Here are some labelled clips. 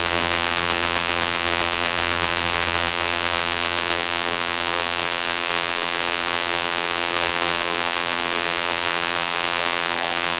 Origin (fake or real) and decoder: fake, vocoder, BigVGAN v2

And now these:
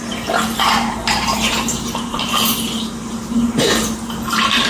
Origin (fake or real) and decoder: fake, vocoder, BigVGAN v2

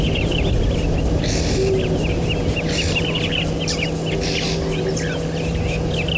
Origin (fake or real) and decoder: real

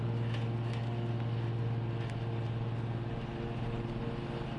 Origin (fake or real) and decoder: real